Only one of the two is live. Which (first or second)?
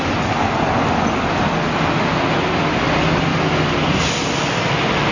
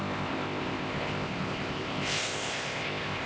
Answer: first